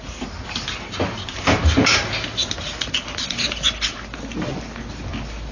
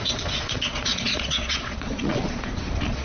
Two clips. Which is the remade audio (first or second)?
second